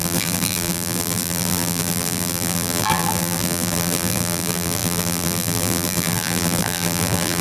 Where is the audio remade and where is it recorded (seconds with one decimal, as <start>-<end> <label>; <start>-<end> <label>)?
0.0-7.4 remade